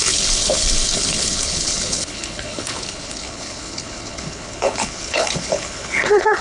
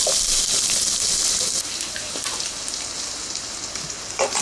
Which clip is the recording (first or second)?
second